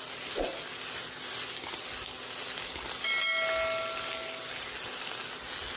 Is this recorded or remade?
recorded